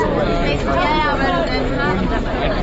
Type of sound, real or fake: real